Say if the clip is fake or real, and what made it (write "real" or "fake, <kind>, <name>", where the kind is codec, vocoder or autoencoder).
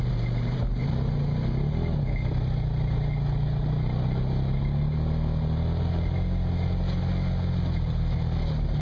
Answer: real